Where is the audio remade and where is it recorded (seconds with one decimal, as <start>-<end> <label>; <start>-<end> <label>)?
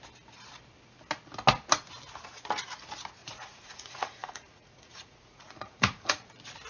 0.0-3.2 recorded; 3.2-6.3 remade; 6.3-6.7 recorded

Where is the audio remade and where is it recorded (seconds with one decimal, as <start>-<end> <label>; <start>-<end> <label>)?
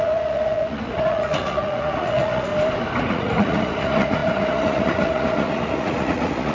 0.0-2.5 remade; 2.5-3.0 recorded; 3.0-6.5 remade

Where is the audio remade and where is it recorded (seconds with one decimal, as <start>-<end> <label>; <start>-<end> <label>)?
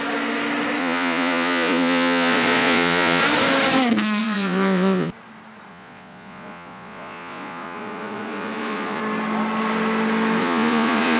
0.0-0.8 recorded; 0.8-3.2 remade; 3.2-4.2 recorded; 4.2-5.1 remade; 5.1-5.7 recorded; 5.7-9.0 remade; 9.0-10.4 recorded; 10.4-11.2 remade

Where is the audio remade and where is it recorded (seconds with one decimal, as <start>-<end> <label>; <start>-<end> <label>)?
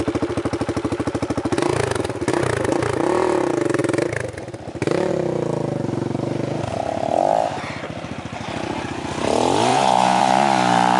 0.0-9.7 recorded; 9.7-10.2 remade; 10.2-11.0 recorded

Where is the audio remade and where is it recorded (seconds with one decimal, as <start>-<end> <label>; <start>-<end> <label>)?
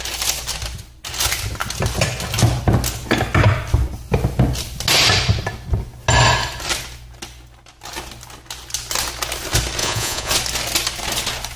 0.0-9.8 recorded; 9.8-10.3 remade; 10.3-11.6 recorded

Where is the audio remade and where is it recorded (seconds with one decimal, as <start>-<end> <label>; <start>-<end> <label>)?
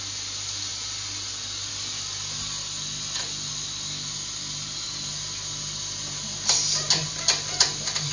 0.0-8.1 recorded